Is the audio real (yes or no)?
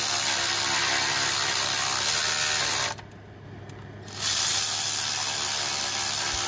yes